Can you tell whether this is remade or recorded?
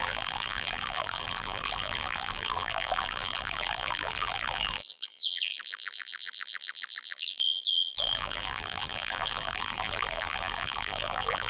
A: remade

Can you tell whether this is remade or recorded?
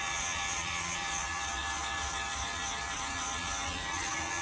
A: remade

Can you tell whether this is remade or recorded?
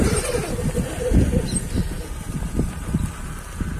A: recorded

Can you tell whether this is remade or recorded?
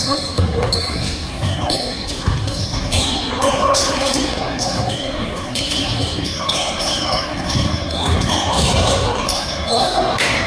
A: remade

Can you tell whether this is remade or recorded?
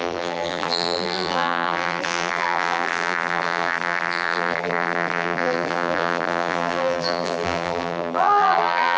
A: remade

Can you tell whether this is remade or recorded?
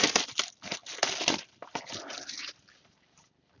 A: recorded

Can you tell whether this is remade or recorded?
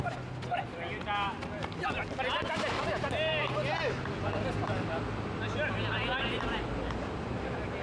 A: recorded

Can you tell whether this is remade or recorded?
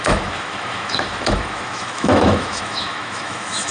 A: remade